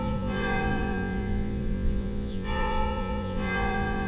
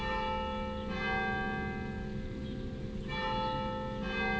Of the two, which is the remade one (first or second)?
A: first